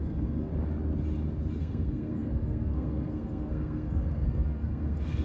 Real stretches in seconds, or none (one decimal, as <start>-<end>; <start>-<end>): 0.5-1.6